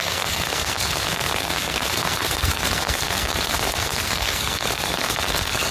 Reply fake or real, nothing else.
fake